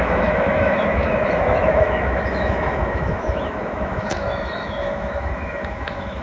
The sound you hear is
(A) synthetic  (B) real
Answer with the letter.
A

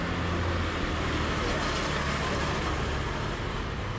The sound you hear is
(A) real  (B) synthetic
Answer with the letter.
A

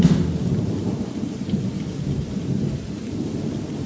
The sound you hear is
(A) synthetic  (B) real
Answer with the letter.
B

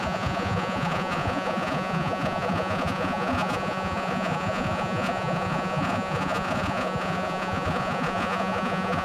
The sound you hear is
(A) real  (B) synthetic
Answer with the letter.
B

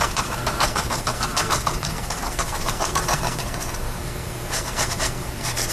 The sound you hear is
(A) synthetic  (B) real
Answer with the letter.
A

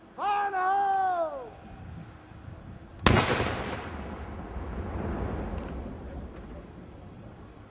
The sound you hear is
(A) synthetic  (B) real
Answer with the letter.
B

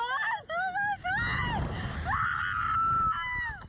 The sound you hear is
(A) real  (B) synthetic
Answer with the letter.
A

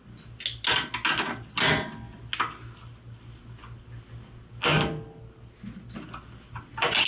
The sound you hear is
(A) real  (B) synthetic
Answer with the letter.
A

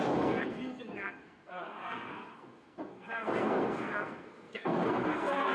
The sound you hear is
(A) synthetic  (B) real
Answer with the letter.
A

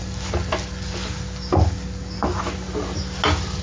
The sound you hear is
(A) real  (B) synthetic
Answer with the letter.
A